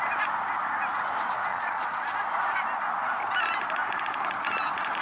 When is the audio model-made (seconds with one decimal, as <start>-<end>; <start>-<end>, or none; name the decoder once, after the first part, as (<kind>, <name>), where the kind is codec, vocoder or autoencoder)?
1.5-2.1 (vocoder, Vocos)